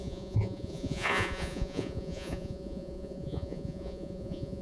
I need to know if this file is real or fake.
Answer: fake